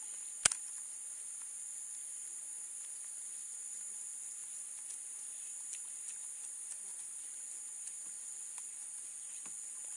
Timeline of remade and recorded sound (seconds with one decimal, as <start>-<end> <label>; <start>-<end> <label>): 0.0-10.0 recorded